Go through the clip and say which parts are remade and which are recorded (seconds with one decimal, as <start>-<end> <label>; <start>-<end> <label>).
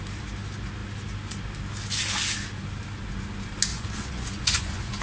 0.0-3.7 recorded; 3.7-5.0 remade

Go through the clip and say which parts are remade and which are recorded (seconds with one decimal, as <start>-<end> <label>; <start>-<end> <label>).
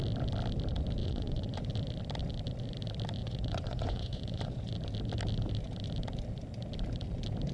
0.0-1.0 recorded; 1.0-1.6 remade; 1.6-3.2 recorded; 3.2-4.7 remade; 4.7-7.5 recorded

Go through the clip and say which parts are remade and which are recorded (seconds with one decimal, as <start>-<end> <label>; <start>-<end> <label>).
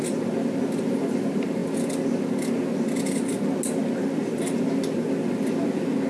0.0-6.1 recorded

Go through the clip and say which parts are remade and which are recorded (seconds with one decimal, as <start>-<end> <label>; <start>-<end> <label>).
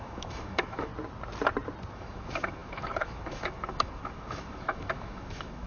0.0-0.9 remade; 0.9-1.9 recorded; 1.9-5.7 remade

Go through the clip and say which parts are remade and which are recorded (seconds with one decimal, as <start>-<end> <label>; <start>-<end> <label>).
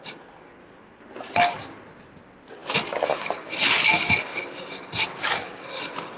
0.0-6.2 recorded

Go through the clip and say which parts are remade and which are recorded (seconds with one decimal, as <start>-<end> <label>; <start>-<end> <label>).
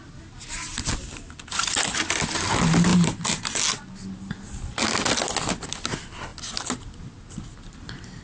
0.0-8.2 recorded